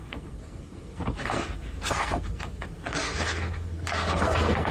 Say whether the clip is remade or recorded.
remade